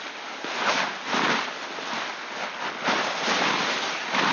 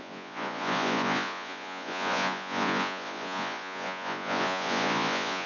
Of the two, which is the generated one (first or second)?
second